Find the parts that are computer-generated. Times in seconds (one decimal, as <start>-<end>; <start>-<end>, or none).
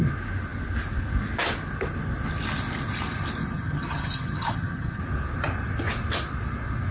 3.4-5.0